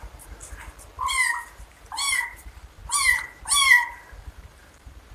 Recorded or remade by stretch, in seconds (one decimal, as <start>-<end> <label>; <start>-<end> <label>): 0.0-0.4 remade; 0.4-1.1 recorded; 1.1-2.8 remade; 2.8-4.2 recorded; 4.2-5.1 remade